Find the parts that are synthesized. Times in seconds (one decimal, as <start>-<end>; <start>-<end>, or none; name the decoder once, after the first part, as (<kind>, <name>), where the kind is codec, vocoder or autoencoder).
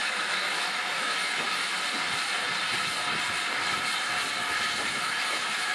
0.0-1.7 (autoencoder, DAC-VAE); 4.8-5.7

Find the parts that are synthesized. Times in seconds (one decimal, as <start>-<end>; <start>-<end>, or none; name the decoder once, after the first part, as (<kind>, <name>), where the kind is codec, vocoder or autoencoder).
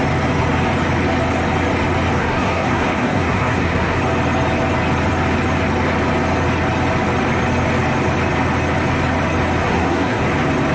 2.2-4.0 (codec, SNAC); 9.6-10.2